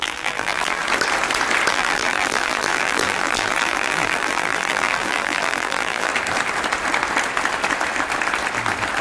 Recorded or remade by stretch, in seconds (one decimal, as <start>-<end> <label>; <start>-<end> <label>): 0.0-0.8 remade; 0.8-1.7 recorded; 1.7-6.1 remade; 6.1-9.0 recorded